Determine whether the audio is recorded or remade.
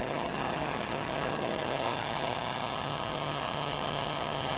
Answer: remade